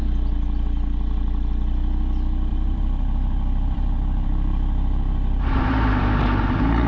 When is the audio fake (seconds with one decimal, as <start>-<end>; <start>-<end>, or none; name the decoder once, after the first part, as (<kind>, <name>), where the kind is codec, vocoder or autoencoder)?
2.5-6.0 (vocoder, BigVGAN v2)